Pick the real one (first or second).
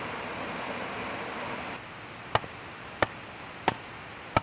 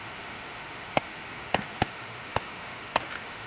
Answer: first